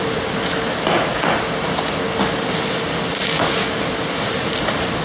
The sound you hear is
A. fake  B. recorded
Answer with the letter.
B